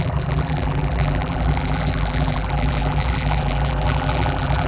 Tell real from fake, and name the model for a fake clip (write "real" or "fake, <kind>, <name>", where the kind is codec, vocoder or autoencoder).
fake, vocoder, BigVGAN v2